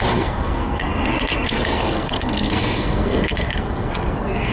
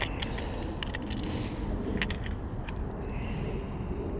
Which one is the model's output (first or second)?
first